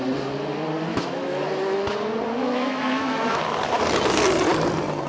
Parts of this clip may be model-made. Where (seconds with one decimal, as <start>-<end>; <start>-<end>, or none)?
0.9-1.4; 2.4-3.4

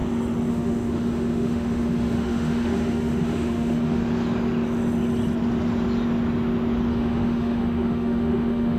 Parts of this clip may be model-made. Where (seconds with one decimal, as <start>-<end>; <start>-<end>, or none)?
0.5-4.0; 6.9-8.8

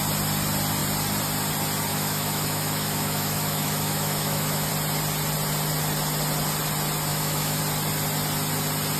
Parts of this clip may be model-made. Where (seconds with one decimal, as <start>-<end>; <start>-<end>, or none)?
1.9-4.7; 7.1-7.6

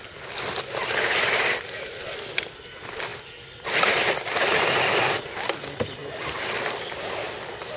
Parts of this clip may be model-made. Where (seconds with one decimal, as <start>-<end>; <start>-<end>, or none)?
none

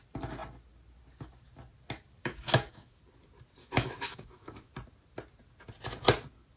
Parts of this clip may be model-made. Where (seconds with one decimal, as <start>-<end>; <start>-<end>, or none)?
2.2-3.0; 3.6-4.7